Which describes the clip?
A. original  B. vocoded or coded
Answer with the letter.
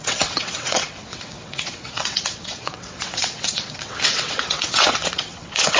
B